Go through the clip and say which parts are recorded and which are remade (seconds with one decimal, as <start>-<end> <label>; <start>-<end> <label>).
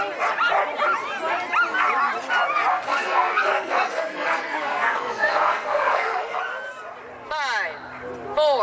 0.0-2.7 recorded; 2.7-6.4 remade; 6.4-8.6 recorded